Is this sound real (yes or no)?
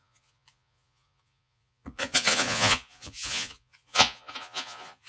no